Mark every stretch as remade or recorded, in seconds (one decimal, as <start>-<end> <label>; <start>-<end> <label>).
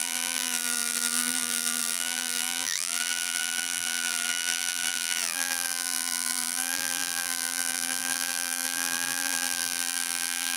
0.0-10.6 remade